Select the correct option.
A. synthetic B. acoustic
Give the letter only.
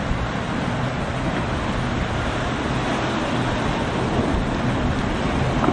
B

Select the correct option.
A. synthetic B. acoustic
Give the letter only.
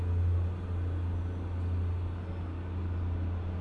B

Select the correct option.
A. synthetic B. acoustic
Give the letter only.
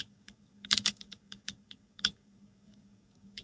A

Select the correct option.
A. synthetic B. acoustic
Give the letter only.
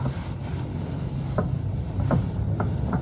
B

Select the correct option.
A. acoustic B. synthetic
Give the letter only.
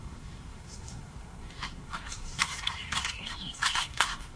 B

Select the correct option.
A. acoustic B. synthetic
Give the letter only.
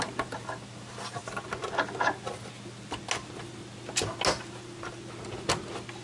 A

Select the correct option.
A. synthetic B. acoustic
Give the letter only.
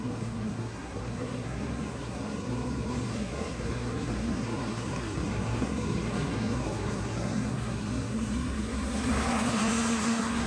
A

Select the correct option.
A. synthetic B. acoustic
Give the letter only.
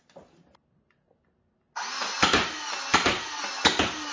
B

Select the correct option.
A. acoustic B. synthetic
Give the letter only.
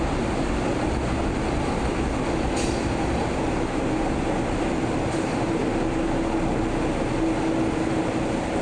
A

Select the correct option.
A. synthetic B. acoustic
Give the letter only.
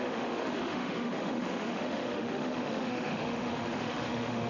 A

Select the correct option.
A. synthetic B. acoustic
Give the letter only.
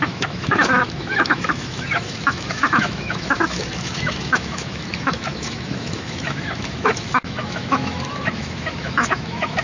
A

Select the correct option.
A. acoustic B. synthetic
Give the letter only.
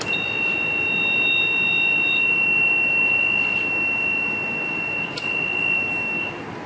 A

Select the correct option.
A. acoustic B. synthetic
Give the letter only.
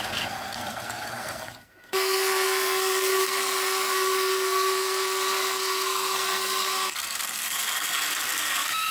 B